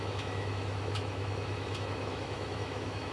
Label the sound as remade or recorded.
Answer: remade